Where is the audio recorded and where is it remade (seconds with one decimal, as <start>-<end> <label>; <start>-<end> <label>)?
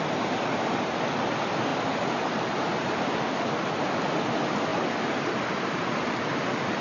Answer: 0.0-6.8 recorded